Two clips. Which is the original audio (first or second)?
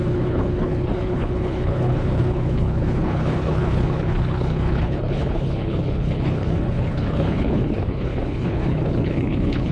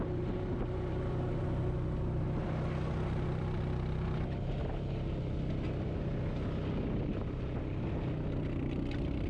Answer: second